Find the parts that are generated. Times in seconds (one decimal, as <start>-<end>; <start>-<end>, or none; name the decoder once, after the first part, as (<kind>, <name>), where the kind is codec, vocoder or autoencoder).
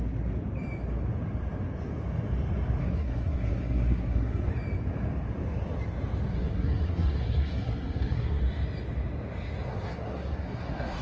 2.8-4.5 (codec, SNAC); 6.3-8.4; 9.7-11.0